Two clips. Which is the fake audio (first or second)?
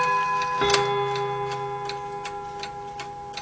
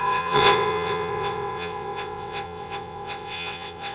second